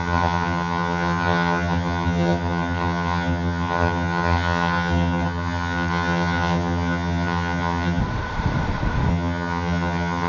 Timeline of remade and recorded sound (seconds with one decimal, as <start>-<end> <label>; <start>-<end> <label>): 0.0-8.0 remade; 8.0-9.1 recorded; 9.1-10.3 remade